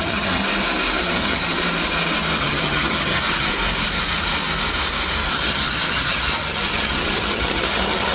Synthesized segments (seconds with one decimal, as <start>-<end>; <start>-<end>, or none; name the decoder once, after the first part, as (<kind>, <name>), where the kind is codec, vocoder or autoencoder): 0.0-0.4 (vocoder, HiFi-GAN); 1.0-1.6; 2.4-3.5; 5.3-8.1